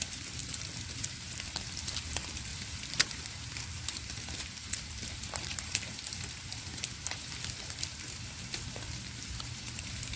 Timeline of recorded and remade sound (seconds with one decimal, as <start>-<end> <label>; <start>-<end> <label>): 0.0-0.4 remade; 0.4-1.2 recorded; 1.2-10.2 remade